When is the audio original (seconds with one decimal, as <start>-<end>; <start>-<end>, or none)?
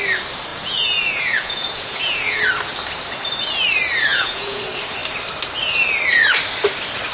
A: 0.0-0.5; 2.4-4.1; 4.6-7.1